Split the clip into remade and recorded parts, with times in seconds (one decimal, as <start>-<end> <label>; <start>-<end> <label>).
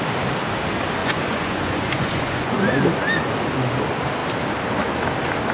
0.0-1.0 recorded; 1.0-2.7 remade; 2.7-5.5 recorded